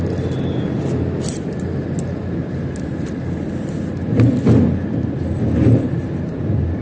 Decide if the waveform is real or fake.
real